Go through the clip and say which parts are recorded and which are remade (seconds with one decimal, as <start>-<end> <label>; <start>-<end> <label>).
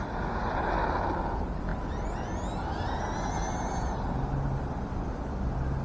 0.0-5.8 recorded